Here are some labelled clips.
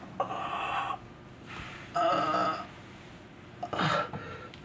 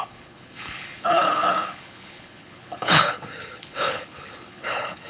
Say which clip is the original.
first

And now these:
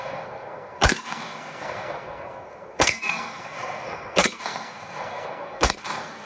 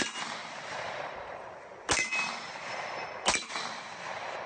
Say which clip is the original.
second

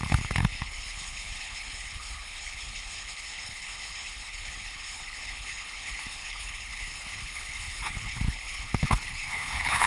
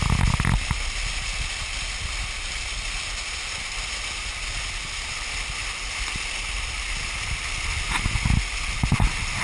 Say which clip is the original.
second